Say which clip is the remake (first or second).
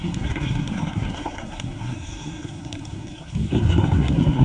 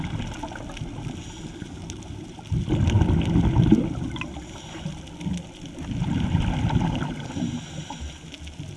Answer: first